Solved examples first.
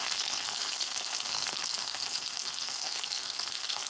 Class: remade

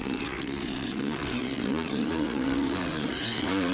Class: remade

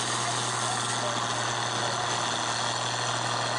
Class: recorded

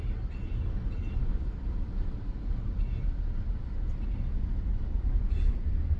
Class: recorded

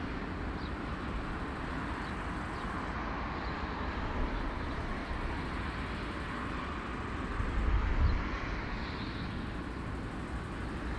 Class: recorded